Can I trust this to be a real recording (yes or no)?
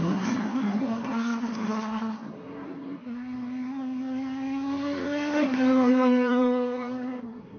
no